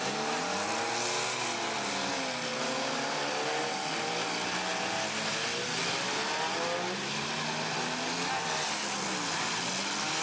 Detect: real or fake real